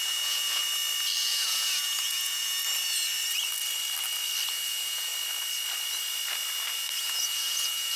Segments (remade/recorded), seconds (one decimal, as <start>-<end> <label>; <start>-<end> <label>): 0.0-0.6 remade; 0.6-1.2 recorded; 1.2-2.6 remade; 2.6-4.5 recorded; 4.5-5.1 remade; 5.1-7.0 recorded; 7.0-8.0 remade